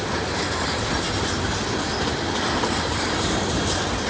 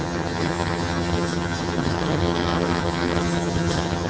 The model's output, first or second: second